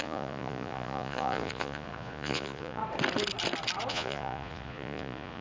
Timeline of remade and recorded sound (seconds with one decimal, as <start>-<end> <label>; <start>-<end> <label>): 0.0-2.8 remade; 2.8-3.9 recorded; 3.9-5.4 remade